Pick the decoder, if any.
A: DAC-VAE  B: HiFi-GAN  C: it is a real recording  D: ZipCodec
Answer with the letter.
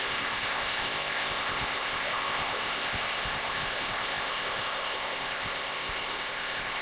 D